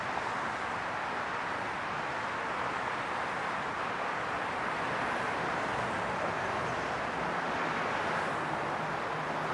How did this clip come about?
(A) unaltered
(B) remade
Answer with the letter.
A